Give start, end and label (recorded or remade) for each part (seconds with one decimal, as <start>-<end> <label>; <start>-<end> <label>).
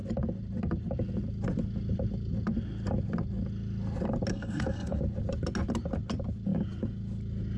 0.0-4.3 recorded; 4.3-5.0 remade; 5.0-7.6 recorded